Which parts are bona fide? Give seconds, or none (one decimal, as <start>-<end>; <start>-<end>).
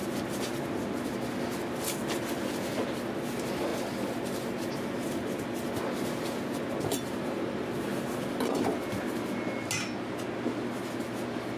0.0-11.6